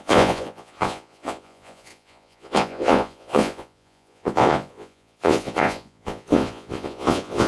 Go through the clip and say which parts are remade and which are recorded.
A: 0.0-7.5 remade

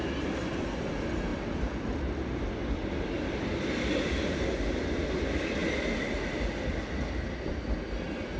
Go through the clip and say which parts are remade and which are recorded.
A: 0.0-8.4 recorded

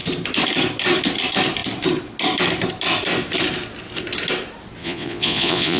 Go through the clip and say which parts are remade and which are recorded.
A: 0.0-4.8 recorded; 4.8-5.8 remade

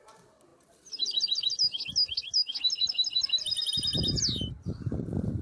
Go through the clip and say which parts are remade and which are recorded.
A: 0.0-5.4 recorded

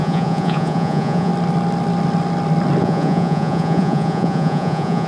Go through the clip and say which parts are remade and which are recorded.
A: 0.0-1.3 remade; 1.3-2.8 recorded; 2.8-5.1 remade

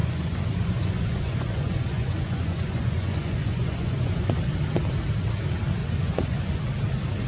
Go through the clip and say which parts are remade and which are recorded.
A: 0.0-4.4 remade; 4.4-5.8 recorded; 5.8-6.6 remade; 6.6-7.3 recorded

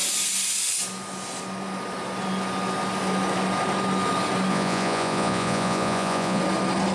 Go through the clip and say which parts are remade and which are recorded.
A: 0.0-4.5 recorded; 4.5-6.4 remade; 6.4-6.9 recorded